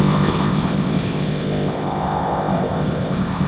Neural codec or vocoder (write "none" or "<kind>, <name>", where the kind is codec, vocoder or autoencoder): codec, ZipCodec